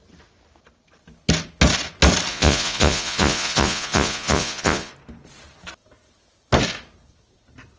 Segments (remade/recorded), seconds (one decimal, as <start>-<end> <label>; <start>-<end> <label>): 0.0-2.3 recorded; 2.3-4.9 remade; 4.9-7.8 recorded